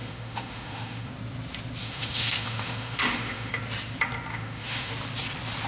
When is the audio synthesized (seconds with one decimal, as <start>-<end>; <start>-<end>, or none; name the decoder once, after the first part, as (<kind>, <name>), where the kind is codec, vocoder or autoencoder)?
0.0-1.1 (autoencoder, DAC-VAE); 1.8-3.5; 4.3-4.9